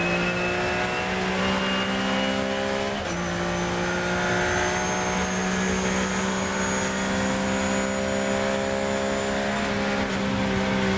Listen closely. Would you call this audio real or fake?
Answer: real